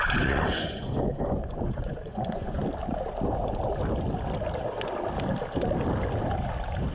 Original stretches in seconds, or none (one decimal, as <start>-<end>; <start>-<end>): 2.6-6.9